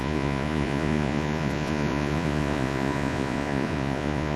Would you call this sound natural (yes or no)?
no